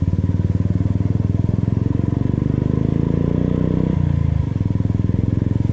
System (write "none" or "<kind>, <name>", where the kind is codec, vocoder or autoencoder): none